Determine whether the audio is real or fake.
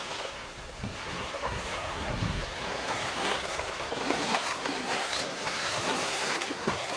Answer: fake